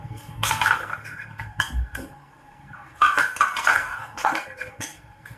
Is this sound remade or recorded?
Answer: remade